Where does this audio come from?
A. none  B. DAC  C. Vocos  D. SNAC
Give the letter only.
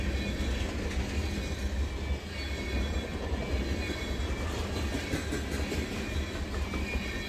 A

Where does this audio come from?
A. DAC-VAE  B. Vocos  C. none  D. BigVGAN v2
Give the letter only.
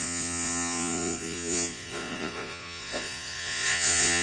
B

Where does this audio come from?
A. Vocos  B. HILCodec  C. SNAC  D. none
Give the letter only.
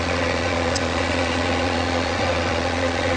A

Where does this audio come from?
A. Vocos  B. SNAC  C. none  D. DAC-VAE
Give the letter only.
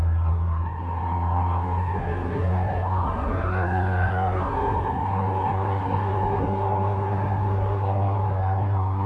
B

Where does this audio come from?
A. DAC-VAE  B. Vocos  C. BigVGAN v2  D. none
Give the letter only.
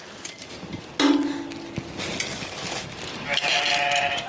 D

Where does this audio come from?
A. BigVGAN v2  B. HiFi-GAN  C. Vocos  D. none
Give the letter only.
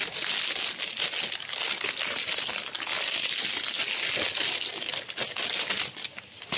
D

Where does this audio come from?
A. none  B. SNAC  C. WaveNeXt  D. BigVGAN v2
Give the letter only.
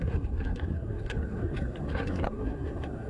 B